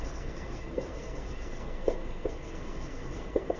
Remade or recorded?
remade